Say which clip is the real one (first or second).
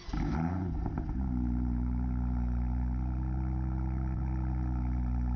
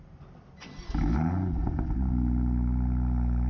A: second